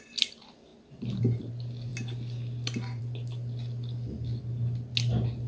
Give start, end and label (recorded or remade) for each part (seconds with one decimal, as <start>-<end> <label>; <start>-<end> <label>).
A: 0.0-5.5 recorded

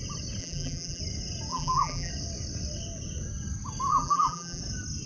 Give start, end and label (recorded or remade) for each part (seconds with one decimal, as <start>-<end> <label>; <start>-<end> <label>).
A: 0.0-0.4 recorded; 0.4-1.0 remade; 1.0-1.5 recorded; 1.5-2.1 remade; 2.1-3.9 recorded; 3.9-4.6 remade; 4.6-5.1 recorded